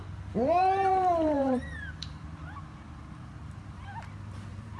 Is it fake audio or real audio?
fake